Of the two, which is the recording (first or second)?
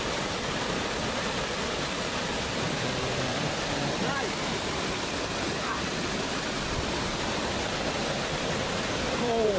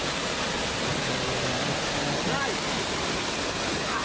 second